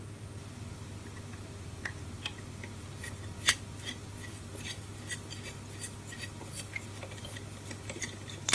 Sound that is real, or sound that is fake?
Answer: real